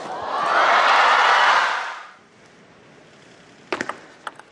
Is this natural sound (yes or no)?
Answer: yes